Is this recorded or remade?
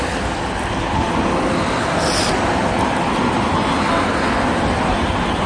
recorded